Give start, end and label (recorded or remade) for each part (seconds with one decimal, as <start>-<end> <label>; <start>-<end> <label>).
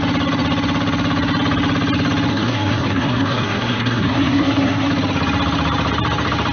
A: 0.0-2.3 recorded; 2.3-4.9 remade; 4.9-6.5 recorded